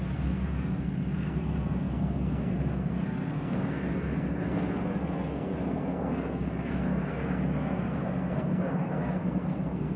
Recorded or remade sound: remade